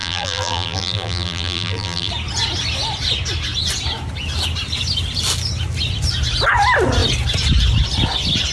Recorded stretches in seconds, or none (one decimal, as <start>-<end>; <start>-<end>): 2.1-8.5